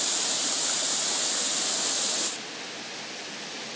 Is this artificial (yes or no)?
no